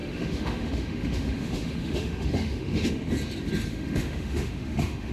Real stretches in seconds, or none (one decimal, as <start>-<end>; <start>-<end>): 3.1-3.7